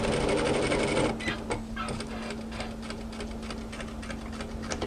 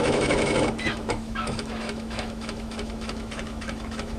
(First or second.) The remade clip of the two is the second